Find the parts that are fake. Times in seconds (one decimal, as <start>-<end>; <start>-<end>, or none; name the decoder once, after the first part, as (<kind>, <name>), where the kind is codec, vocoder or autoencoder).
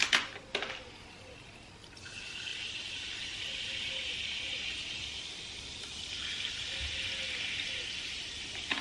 none